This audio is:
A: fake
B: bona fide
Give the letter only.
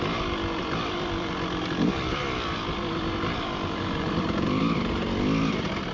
A